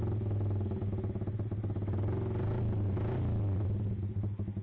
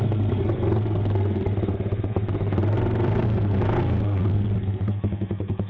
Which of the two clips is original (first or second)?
first